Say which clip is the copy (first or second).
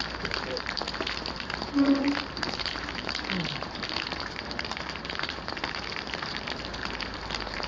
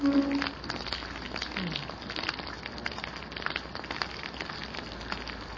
first